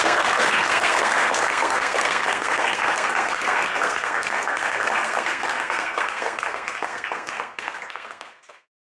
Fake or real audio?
fake